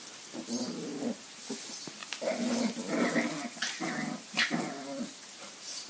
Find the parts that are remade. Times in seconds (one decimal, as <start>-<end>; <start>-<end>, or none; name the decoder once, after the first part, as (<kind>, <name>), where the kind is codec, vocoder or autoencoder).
0.0-0.9 (vocoder, BigVGAN v2); 1.6-2.0; 5.5-5.9